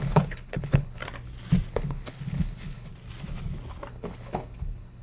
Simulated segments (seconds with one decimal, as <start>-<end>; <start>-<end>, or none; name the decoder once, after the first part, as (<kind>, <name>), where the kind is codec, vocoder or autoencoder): 0.0-1.0 (codec, HILCodec); 1.7-2.9; 3.9-5.0